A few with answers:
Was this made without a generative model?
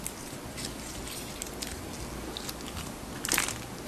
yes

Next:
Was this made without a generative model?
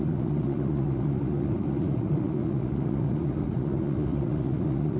no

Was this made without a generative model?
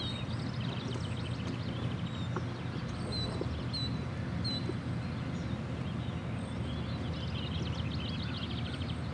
yes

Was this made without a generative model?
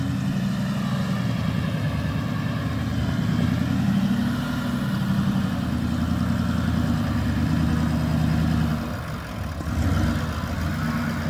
yes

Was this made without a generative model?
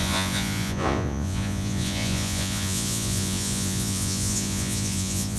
no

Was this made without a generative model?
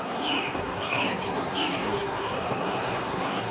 no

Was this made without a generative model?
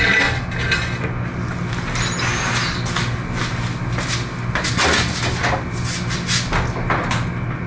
yes